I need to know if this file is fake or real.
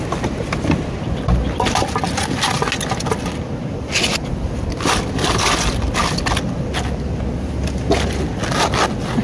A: real